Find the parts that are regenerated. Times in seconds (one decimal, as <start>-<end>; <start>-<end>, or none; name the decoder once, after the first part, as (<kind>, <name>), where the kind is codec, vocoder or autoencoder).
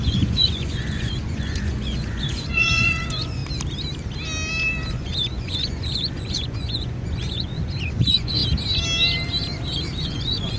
0.0-3.4 (vocoder, Vocos); 4.9-8.4; 10.0-10.6